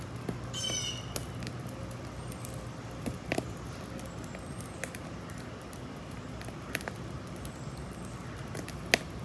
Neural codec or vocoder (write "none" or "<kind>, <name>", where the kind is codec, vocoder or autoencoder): none